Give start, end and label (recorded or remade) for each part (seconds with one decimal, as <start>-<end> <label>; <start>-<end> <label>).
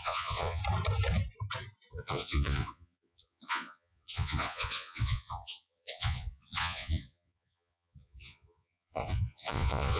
0.0-0.6 remade; 0.6-1.9 recorded; 1.9-10.0 remade